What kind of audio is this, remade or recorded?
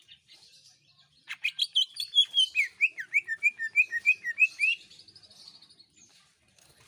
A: remade